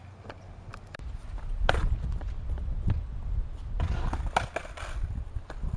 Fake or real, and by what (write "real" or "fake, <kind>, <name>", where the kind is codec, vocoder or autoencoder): real